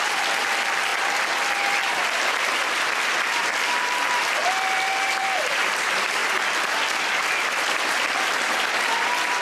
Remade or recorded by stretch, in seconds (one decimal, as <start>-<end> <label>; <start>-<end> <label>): 0.0-6.2 remade; 6.2-6.7 recorded; 6.7-9.4 remade